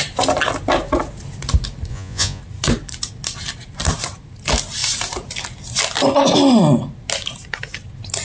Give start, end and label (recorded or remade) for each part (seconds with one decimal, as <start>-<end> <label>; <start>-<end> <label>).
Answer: 0.0-1.9 recorded; 1.9-2.4 remade; 2.4-8.2 recorded